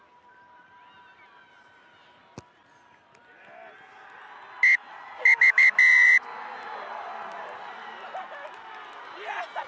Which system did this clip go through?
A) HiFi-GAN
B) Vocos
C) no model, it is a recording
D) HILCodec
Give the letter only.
C